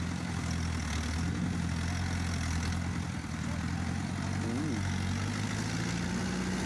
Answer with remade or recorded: recorded